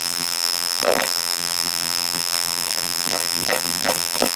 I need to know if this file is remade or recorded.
remade